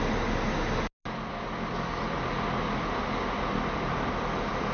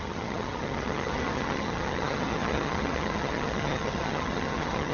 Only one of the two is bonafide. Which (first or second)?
first